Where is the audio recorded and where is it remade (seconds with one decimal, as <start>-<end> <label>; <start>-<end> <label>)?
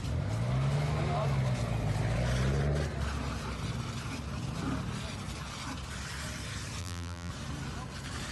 0.0-6.8 recorded; 6.8-7.3 remade; 7.3-8.3 recorded